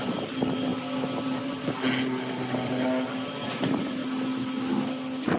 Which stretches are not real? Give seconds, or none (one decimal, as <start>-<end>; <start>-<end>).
none